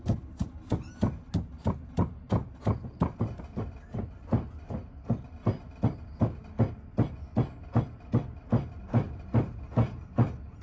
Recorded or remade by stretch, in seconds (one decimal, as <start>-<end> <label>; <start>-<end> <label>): 0.0-8.9 recorded; 8.9-10.0 remade; 10.0-10.6 recorded